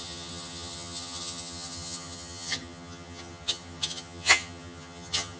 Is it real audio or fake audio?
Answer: fake